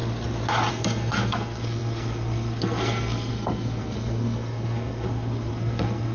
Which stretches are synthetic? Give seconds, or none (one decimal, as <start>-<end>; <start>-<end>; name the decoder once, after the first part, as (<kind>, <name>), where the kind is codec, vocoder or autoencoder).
0.7-6.1 (codec, SNAC)